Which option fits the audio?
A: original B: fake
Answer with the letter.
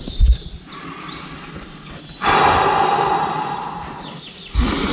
A